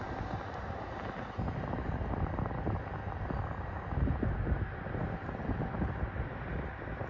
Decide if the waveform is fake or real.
real